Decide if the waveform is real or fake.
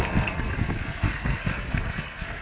fake